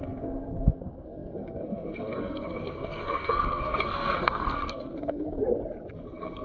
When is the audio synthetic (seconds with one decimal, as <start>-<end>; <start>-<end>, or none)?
0.0-5.4; 5.9-6.4